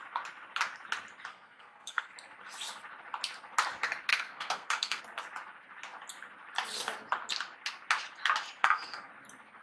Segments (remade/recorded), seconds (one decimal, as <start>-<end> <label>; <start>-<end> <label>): 0.0-1.3 recorded; 1.3-2.1 remade; 2.1-4.1 recorded; 4.1-5.0 remade; 5.0-8.6 recorded; 8.6-9.1 remade; 9.1-9.6 recorded